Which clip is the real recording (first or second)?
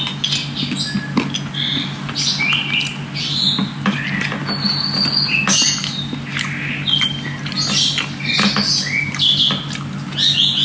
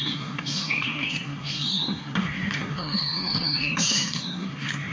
first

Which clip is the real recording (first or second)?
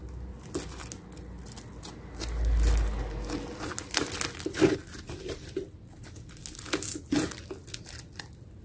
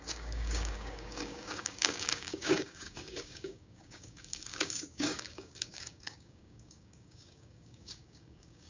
first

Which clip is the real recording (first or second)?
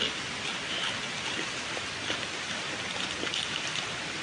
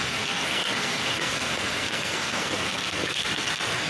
first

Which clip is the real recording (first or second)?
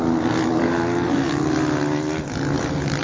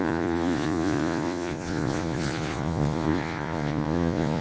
first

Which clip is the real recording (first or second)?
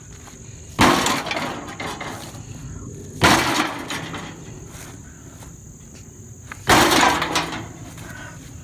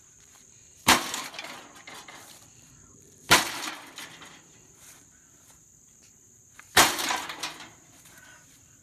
first